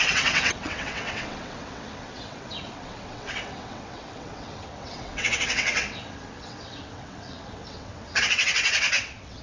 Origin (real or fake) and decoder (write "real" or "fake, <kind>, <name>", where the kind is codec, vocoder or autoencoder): fake, vocoder, WaveNeXt